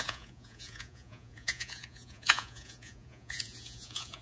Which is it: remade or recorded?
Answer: remade